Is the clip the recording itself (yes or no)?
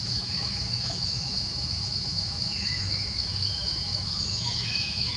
no